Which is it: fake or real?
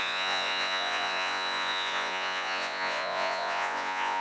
fake